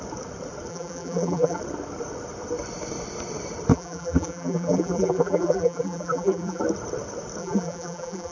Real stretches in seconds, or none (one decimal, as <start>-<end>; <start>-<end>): 0.0-0.7; 1.6-3.7; 6.6-7.4